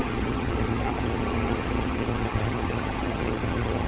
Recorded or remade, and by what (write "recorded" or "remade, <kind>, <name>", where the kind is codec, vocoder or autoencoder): remade, vocoder, HiFi-GAN